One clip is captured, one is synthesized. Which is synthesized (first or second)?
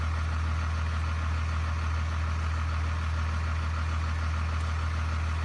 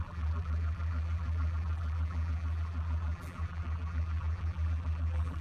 second